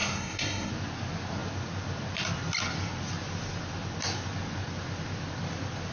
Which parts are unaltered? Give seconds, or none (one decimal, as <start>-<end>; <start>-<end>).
0.7-5.9